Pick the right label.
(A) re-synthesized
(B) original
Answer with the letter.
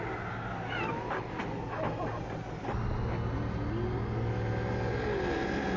B